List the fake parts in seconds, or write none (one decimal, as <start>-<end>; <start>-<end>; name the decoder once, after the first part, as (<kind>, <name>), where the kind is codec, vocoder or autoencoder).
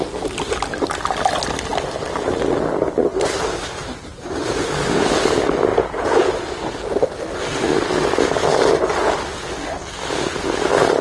5.7-6.3 (vocoder, Vocos)